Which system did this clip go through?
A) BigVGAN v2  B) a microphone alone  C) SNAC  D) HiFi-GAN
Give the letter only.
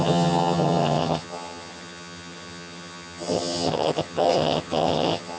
D